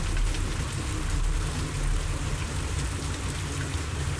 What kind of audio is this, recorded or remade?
recorded